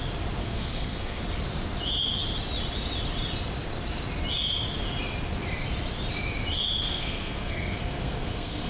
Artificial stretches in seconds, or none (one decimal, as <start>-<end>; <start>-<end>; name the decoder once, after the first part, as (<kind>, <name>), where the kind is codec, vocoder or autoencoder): 0.4-1.2 (codec, SNAC); 6.8-8.7